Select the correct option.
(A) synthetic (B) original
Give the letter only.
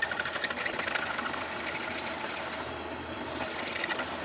B